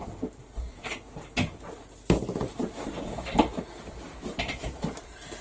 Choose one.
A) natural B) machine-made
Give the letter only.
A